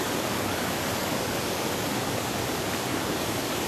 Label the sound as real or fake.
fake